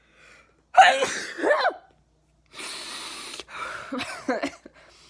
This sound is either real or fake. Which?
real